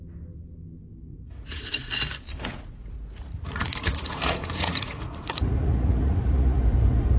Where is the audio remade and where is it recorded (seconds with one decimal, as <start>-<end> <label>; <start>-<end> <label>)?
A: 0.0-1.1 recorded; 1.1-1.9 remade; 1.9-2.3 recorded; 2.3-6.6 remade; 6.6-7.2 recorded